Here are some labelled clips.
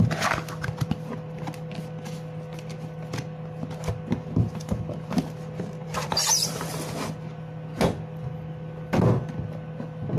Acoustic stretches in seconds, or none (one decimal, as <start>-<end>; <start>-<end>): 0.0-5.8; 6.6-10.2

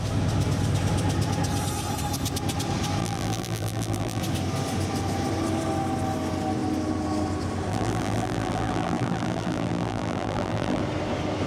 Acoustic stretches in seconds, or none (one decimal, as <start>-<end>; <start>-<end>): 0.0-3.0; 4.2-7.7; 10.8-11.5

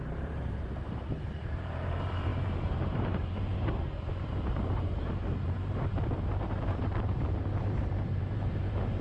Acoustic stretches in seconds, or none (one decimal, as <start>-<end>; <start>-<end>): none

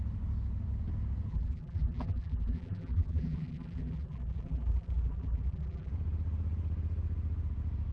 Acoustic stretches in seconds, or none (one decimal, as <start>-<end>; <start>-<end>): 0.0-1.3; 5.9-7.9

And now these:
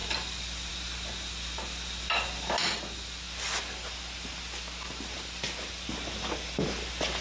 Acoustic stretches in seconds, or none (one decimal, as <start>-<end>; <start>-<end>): 0.7-2.6; 5.9-7.2

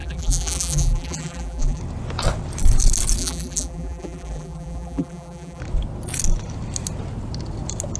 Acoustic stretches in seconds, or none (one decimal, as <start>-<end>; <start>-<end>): 1.8-3.2; 5.6-8.0